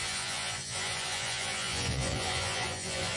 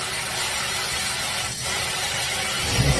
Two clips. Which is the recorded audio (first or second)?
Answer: second